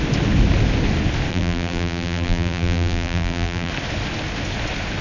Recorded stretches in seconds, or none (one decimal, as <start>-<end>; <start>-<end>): 0.0-1.3; 3.7-5.0

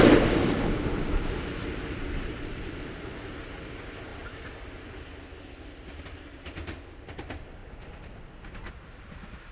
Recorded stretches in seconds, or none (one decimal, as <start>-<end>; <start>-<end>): 0.0-9.5

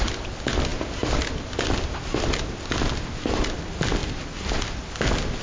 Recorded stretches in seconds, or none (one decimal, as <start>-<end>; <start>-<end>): 0.0-5.4

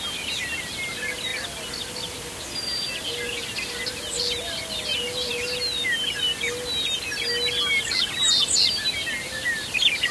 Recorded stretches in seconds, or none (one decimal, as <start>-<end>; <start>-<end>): 0.0-10.1

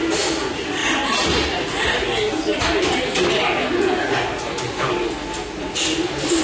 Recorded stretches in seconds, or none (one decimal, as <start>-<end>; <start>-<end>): 0.0-0.8; 2.6-5.6

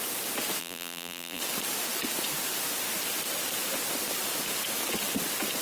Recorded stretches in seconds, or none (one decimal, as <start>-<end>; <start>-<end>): 0.0-0.6; 1.4-5.6

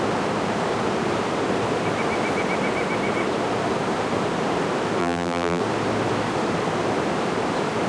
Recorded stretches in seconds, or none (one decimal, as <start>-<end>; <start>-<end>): 0.0-5.0; 5.6-7.9